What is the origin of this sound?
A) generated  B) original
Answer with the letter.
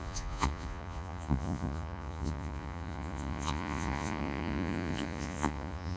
A